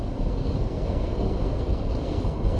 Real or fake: fake